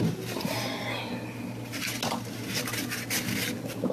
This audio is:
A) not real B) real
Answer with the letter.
B